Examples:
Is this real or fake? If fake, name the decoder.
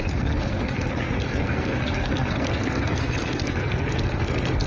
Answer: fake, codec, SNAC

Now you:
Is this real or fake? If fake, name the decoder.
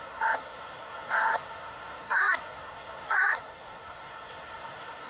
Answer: fake, codec, SNAC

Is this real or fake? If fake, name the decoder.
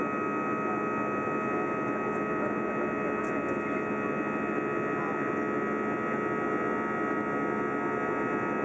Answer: real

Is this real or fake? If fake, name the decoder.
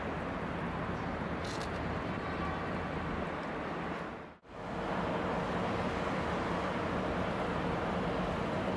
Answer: real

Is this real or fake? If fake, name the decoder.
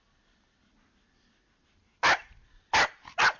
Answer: real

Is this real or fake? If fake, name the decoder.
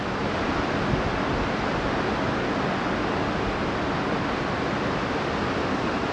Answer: real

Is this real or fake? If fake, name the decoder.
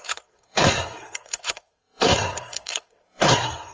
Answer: fake, codec, SNAC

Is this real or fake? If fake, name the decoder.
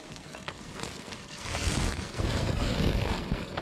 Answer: fake, codec, SNAC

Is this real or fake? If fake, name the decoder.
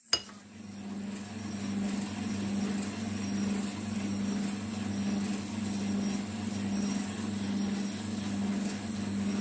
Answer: real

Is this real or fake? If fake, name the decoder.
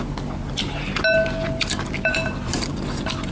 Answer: real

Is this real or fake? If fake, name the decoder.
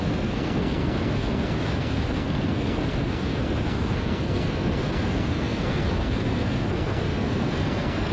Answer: fake, codec, SNAC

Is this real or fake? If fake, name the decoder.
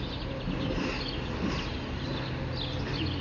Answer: real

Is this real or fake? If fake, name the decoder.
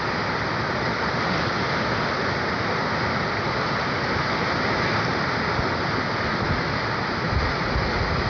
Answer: real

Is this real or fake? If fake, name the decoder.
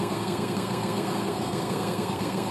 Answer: fake, codec, SNAC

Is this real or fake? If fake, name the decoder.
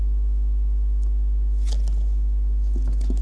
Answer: real